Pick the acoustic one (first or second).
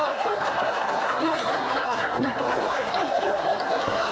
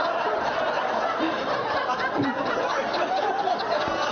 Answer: second